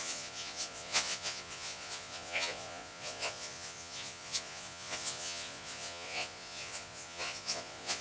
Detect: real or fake fake